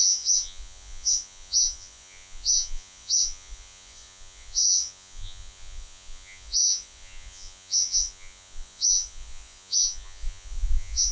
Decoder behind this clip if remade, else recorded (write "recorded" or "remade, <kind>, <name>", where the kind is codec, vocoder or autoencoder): remade, vocoder, Vocos